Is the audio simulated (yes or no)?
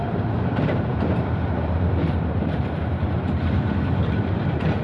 yes